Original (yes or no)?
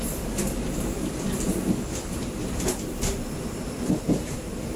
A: no